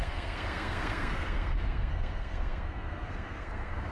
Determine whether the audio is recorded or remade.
remade